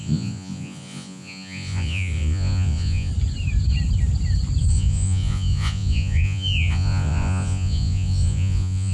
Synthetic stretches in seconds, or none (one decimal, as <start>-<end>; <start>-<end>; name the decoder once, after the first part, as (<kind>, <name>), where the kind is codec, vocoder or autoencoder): 0.0-3.1 (vocoder, Vocos); 4.7-8.9